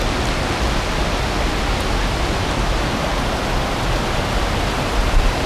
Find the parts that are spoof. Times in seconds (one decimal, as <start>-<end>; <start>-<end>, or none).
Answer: none